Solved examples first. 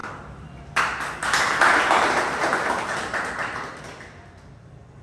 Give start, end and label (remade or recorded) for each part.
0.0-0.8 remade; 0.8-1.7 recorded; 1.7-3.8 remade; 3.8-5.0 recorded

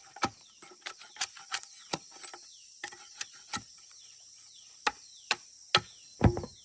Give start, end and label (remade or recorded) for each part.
0.0-6.6 recorded

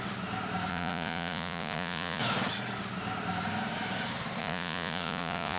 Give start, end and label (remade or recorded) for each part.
0.0-0.7 recorded; 0.7-2.2 remade; 2.2-4.4 recorded; 4.4-5.6 remade

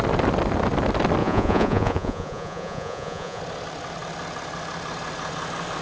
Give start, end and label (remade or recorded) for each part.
0.0-1.2 recorded; 1.2-3.4 remade; 3.4-5.8 recorded

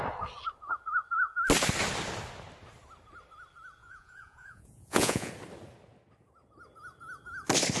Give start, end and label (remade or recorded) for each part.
0.0-3.8 recorded; 3.8-5.3 remade; 5.3-7.8 recorded